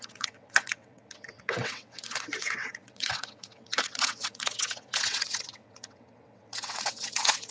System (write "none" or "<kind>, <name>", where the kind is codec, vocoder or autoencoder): vocoder, WaveNeXt